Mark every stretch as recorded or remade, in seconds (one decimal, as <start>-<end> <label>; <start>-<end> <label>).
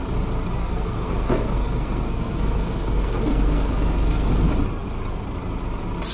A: 0.0-0.6 recorded; 0.6-4.3 remade; 4.3-6.1 recorded